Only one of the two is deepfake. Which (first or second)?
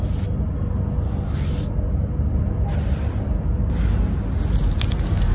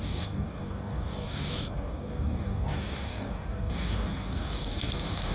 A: second